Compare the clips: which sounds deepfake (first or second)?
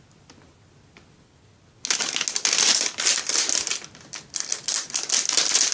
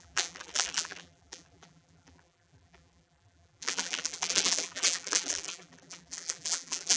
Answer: second